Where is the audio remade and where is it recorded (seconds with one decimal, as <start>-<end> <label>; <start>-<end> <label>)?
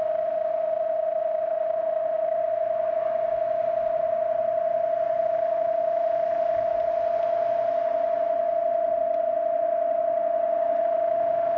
0.0-2.4 remade; 2.4-5.2 recorded; 5.2-6.7 remade; 6.7-10.8 recorded; 10.8-11.6 remade